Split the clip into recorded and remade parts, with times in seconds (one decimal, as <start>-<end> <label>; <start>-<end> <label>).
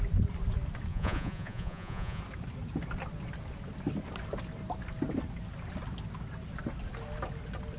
0.0-0.9 recorded; 0.9-2.2 remade; 2.2-7.8 recorded